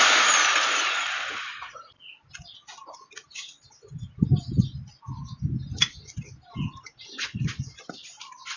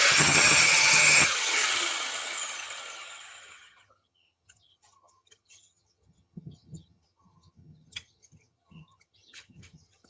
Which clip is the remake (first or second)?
second